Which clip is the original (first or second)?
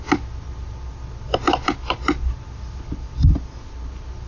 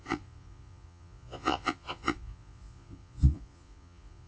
first